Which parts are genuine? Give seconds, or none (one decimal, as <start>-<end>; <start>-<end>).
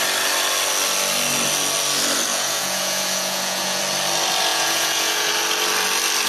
0.0-2.3; 3.8-4.5; 5.3-6.3